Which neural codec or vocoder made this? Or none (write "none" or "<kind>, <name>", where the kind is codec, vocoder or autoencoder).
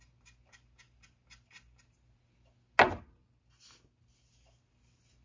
none